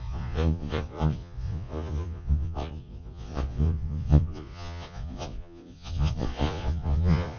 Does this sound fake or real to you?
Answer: fake